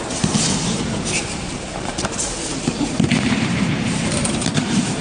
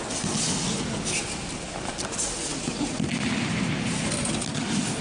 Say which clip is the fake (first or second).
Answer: first